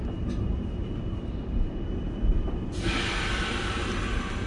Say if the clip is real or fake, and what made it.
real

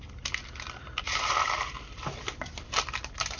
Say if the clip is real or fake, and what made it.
fake, vocoder, BigVGAN v2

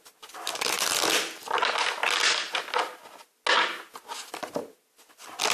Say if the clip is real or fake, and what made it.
real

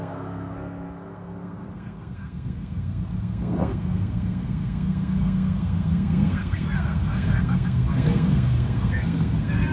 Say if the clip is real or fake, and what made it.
fake, codec, SNAC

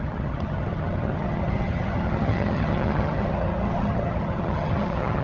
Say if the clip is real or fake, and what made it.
fake, vocoder, HiFi-GAN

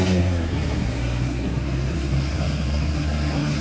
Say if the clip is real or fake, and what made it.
fake, codec, SNAC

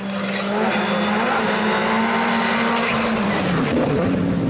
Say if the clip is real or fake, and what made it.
real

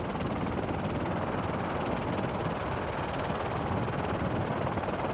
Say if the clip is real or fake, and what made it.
real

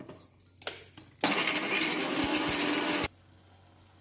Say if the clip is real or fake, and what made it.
real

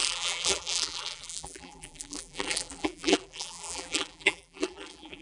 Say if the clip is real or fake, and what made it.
fake, vocoder, BigVGAN v2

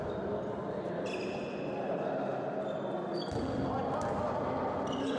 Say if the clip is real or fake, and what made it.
real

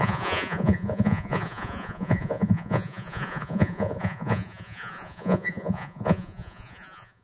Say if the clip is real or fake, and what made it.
fake, vocoder, Vocos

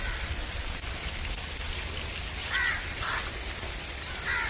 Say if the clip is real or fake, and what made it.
real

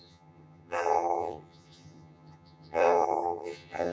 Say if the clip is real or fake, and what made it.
fake, vocoder, HiFi-GAN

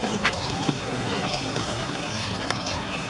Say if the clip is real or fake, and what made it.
fake, codec, SNAC